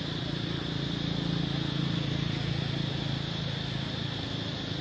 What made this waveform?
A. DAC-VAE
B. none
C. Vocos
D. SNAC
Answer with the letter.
B